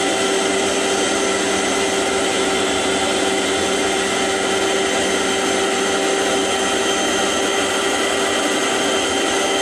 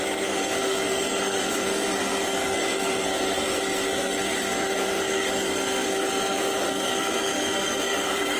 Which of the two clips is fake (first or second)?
second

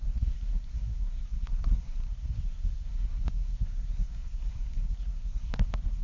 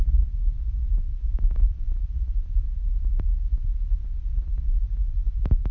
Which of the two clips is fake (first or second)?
first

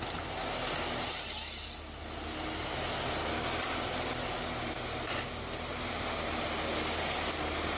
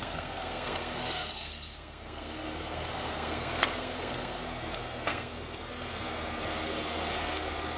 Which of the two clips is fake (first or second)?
second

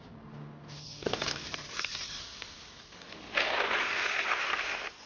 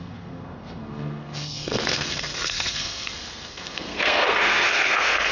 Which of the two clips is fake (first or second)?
second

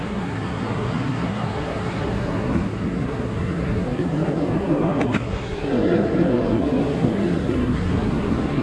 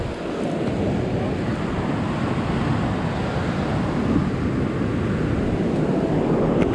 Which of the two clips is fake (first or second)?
first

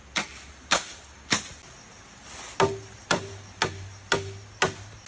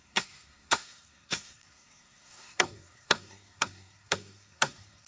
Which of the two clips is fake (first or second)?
second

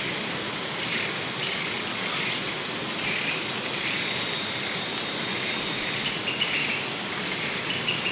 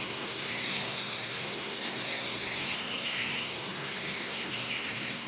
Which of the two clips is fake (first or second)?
second